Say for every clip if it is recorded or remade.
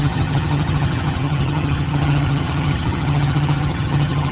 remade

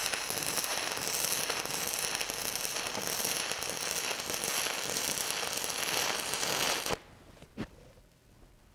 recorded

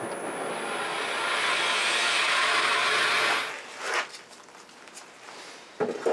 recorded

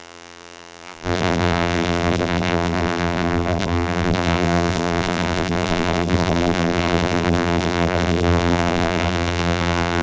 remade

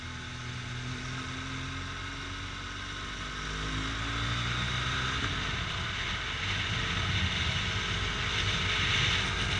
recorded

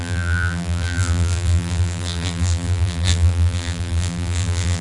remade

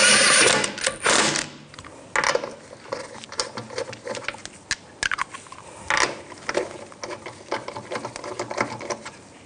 recorded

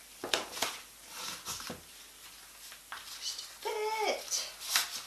recorded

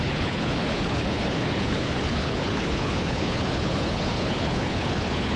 remade